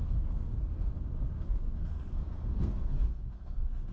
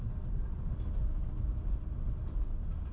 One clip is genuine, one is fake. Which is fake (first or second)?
first